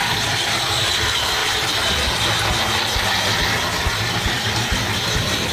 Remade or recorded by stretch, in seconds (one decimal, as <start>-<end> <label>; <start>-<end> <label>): 0.0-1.4 remade; 1.4-4.1 recorded; 4.1-5.5 remade